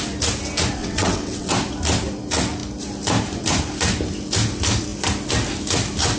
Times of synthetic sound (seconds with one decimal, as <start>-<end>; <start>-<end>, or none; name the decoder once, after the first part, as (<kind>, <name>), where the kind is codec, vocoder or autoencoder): 0.8-1.5 (vocoder, WaveNeXt)